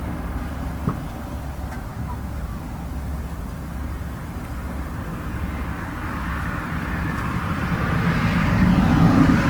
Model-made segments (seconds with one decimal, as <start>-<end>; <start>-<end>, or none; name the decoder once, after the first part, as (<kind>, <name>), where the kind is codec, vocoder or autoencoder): 1.9-2.9 (codec, DAC); 5.1-6.9; 8.4-9.5